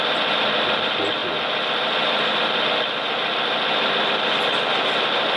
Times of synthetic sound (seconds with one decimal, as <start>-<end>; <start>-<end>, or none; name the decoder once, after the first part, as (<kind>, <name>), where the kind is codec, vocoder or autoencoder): none